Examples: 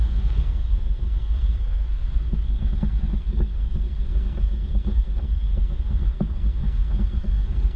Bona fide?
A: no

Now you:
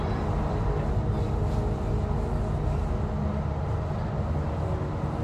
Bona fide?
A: yes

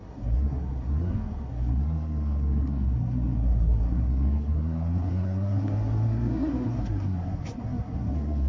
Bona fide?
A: no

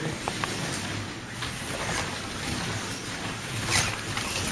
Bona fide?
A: yes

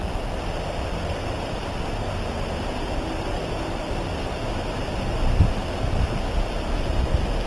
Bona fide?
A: yes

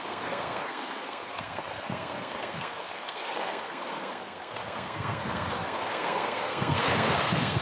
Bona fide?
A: no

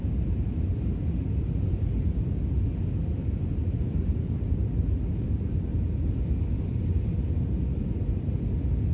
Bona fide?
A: yes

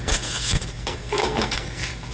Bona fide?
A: no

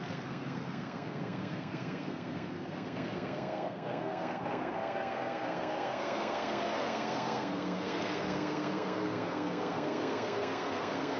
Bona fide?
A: no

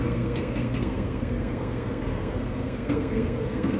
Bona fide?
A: no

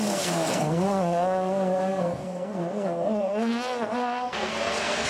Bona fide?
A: no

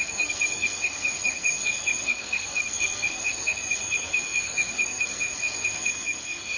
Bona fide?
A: no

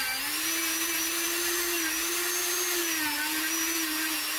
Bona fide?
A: yes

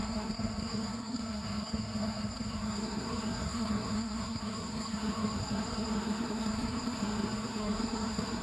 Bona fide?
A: no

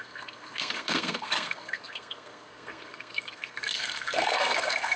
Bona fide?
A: no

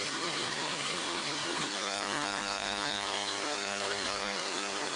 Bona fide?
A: no